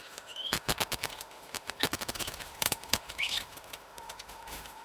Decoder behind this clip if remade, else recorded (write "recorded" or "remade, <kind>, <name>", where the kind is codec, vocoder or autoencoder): remade, autoencoder, DAC-VAE